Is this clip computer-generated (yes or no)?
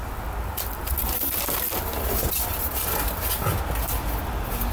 no